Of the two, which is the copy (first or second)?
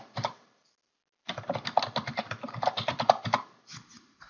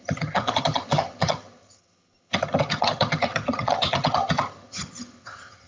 second